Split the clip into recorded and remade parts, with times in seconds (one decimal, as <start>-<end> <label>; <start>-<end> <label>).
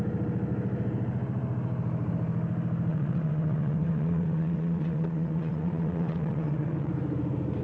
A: 0.0-2.9 recorded; 2.9-6.9 remade; 6.9-7.6 recorded